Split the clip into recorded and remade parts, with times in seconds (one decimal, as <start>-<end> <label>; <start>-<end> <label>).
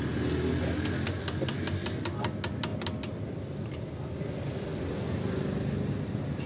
0.0-6.5 recorded